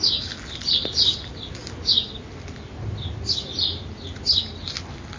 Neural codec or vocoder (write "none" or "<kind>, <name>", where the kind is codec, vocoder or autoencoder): none